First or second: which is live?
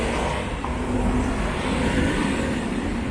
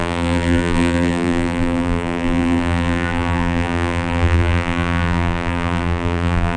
first